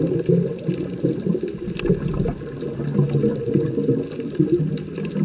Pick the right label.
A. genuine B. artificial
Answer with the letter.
A